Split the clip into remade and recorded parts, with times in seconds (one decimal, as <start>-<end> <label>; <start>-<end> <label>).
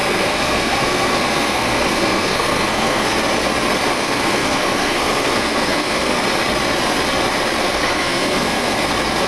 0.0-3.2 remade; 3.2-3.9 recorded; 3.9-6.2 remade; 6.2-7.6 recorded; 7.6-8.9 remade; 8.9-9.3 recorded